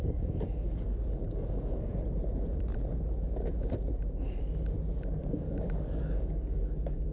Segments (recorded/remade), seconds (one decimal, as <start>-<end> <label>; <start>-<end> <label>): 0.0-1.9 remade; 1.9-5.2 recorded; 5.2-7.1 remade